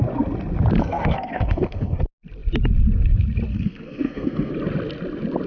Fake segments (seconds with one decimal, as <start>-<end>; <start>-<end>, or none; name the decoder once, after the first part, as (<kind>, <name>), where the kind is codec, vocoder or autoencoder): 0.8-2.0 (codec, SNAC); 3.5-4.5